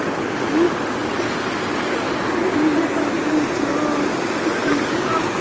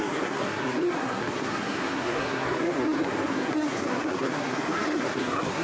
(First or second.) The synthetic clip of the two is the second